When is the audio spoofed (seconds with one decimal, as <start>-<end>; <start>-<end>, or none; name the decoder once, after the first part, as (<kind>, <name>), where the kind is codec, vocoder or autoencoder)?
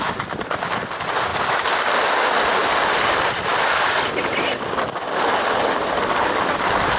none